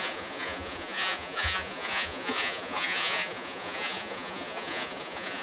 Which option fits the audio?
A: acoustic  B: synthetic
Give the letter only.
B